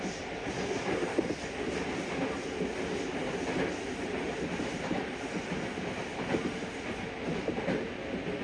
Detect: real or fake real